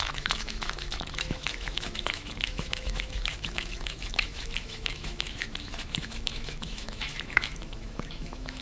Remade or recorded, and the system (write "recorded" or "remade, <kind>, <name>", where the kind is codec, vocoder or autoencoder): remade, autoencoder, DAC-VAE